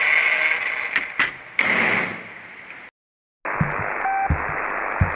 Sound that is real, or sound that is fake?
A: real